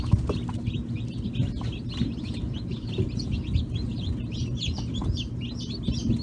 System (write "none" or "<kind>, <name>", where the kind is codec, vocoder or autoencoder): none